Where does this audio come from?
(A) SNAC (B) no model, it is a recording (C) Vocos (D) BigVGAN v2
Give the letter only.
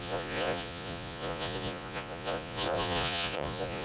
C